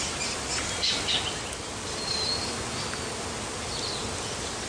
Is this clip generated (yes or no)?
no